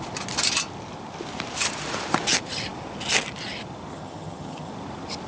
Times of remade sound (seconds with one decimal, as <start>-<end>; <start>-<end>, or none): 3.9-4.7